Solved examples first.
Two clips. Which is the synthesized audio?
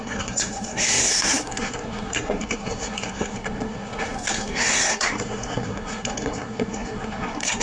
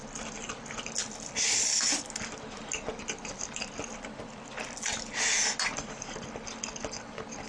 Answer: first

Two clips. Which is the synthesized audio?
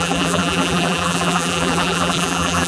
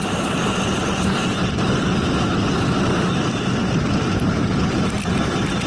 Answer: first